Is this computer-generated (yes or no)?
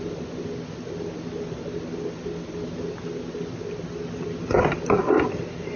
no